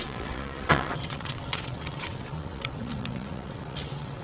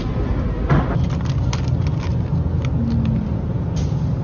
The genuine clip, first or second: second